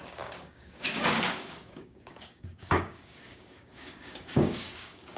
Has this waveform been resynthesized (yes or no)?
yes